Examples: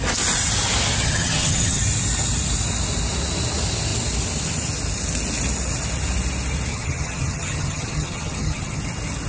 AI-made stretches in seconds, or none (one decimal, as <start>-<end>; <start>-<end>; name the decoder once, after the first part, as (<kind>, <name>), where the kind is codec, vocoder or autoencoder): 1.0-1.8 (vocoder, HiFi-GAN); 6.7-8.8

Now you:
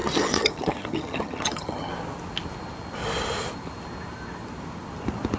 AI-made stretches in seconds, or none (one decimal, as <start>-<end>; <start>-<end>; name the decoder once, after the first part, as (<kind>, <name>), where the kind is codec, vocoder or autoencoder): 0.0-1.9 (vocoder, HiFi-GAN)

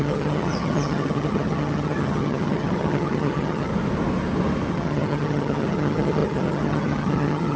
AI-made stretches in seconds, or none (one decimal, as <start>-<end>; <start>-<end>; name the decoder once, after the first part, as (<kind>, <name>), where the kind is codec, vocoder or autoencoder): 0.0-3.7 (vocoder, HiFi-GAN); 4.7-7.6

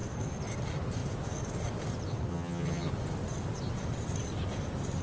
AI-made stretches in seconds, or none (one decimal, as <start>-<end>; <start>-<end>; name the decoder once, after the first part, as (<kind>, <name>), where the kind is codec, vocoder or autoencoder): 2.3-2.9 (vocoder, HiFi-GAN)